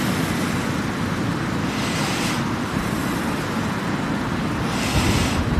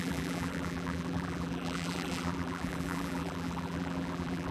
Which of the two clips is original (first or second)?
first